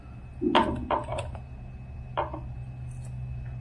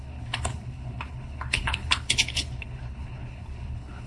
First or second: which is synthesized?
second